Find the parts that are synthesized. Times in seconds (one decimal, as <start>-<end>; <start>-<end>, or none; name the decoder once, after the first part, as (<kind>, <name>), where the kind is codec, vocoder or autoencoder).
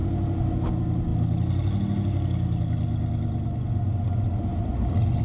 none